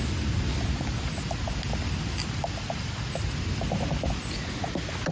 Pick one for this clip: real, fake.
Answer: real